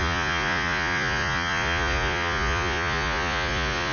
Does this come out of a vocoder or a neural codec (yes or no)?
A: yes